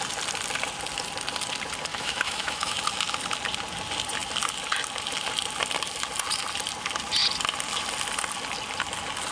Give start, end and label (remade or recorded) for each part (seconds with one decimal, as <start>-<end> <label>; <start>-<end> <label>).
0.0-1.9 recorded; 1.9-2.8 remade; 2.8-9.3 recorded